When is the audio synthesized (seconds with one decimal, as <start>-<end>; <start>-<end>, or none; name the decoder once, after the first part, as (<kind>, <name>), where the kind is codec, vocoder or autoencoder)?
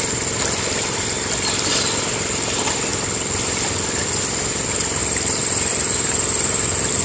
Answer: 0.0-2.9 (vocoder, BigVGAN v2); 4.0-7.0